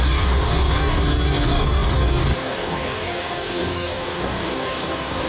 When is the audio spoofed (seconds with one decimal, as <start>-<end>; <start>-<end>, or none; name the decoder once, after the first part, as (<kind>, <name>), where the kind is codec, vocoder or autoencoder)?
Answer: 0.0-5.3 (codec, DAC)